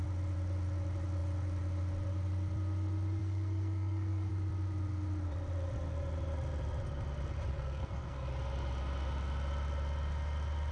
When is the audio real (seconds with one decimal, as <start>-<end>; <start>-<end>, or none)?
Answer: 0.0-3.2; 4.3-7.5; 8.3-10.7